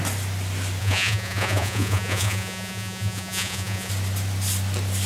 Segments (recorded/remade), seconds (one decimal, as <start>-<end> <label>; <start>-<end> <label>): 0.0-0.8 recorded; 0.8-3.9 remade; 3.9-5.1 recorded